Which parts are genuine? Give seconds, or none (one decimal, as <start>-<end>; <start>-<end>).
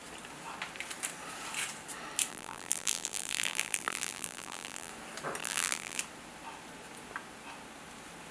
0.0-2.3; 4.9-5.4; 6.0-8.3